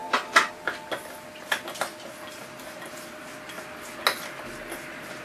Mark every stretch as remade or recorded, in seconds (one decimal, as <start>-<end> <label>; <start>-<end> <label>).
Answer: 0.0-5.2 recorded